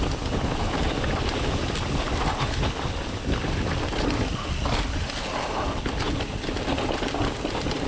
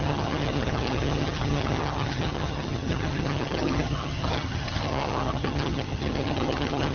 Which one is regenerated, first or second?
second